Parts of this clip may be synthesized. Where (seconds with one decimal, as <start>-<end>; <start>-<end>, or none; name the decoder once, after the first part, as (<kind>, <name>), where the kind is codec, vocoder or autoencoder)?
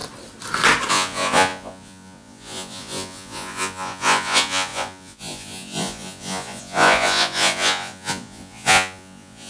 0.9-9.5 (vocoder, Vocos)